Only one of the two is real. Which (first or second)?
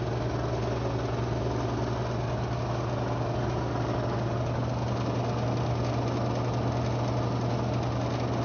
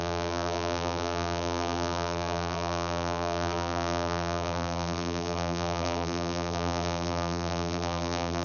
first